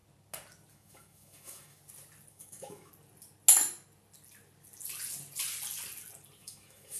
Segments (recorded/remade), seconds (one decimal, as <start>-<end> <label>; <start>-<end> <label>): 0.0-0.7 recorded; 0.7-1.8 remade; 1.8-2.3 recorded; 2.3-2.9 remade; 2.9-6.4 recorded; 6.4-7.0 remade